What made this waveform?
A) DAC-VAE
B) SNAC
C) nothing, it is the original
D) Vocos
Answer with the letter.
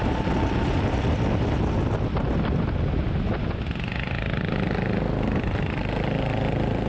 C